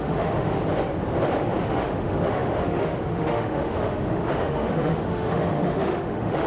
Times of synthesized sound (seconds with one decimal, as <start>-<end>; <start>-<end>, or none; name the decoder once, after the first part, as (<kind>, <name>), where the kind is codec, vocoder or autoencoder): 0.0-0.6 (autoencoder, DAC-VAE); 1.7-6.5